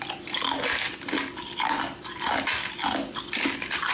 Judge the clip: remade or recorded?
recorded